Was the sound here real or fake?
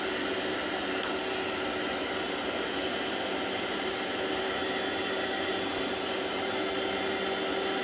real